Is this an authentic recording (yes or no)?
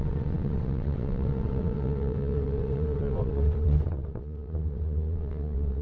no